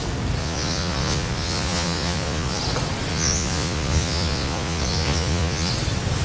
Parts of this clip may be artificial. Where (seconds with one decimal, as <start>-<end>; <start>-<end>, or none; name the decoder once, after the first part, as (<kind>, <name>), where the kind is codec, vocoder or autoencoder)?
0.4-2.6 (vocoder, Vocos); 3.1-5.7